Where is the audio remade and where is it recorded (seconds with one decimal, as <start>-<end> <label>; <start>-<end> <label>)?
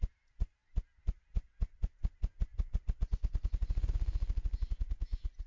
0.0-5.5 recorded